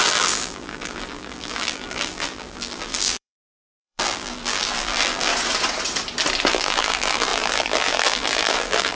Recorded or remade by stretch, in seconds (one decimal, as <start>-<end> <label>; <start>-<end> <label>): 0.0-5.3 remade; 5.3-6.5 recorded; 6.5-9.0 remade